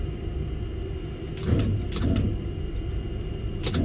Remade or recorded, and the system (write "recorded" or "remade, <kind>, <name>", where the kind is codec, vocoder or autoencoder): recorded